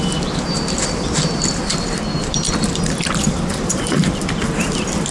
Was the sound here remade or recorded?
remade